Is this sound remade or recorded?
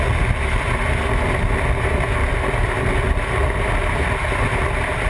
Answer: recorded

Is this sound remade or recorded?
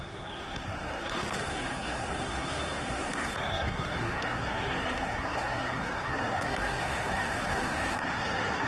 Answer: remade